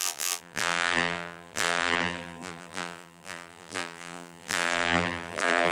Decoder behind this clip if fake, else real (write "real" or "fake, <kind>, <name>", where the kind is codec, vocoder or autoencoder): fake, vocoder, BigVGAN v2